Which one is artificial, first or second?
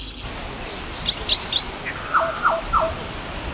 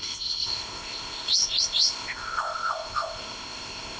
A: second